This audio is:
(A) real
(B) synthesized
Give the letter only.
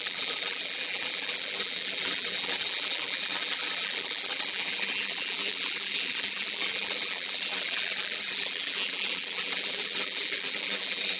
B